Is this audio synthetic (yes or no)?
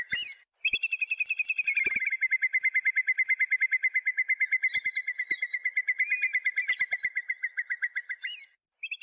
no